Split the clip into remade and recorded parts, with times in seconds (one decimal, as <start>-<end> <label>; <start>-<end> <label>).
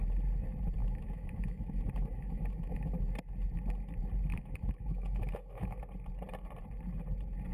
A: 0.0-0.8 recorded; 0.8-3.0 remade; 3.0-4.3 recorded; 4.3-5.8 remade; 5.8-7.5 recorded